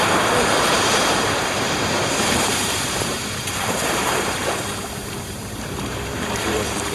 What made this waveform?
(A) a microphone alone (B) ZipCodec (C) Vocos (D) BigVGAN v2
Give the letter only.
D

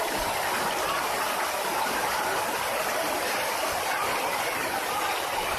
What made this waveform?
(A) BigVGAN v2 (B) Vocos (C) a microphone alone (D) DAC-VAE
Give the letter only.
A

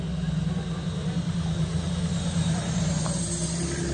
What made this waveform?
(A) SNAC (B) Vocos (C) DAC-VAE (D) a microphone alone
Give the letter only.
D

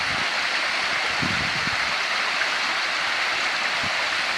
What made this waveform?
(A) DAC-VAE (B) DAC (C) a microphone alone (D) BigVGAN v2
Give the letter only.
C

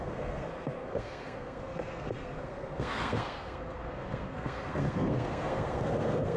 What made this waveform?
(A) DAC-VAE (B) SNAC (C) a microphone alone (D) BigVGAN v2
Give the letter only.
B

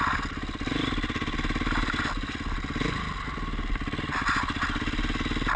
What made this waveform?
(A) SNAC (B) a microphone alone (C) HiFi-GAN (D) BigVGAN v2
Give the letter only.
B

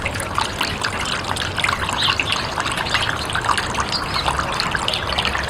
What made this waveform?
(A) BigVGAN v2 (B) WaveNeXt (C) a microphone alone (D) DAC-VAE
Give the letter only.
C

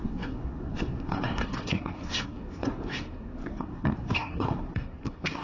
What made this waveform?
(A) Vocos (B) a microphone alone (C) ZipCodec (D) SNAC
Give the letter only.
D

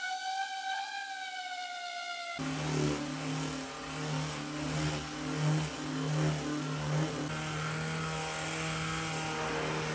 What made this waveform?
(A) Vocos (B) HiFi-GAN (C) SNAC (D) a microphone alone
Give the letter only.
D